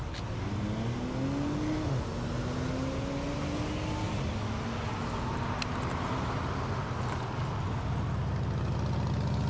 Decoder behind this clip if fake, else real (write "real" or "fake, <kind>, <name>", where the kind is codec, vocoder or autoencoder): real